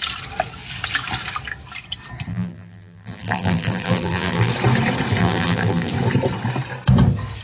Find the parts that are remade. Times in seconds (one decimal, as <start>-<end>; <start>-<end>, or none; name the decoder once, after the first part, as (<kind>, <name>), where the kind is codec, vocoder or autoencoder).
2.3-4.5 (vocoder, BigVGAN v2); 5.2-5.9